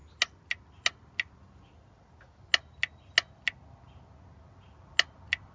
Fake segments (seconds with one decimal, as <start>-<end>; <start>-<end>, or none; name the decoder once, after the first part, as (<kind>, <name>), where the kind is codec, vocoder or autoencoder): none